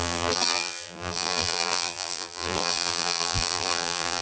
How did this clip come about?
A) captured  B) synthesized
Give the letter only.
B